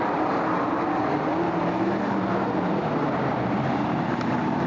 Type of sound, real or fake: fake